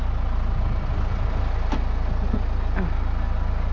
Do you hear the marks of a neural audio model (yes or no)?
no